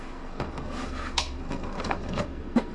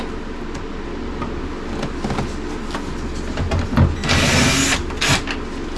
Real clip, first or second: second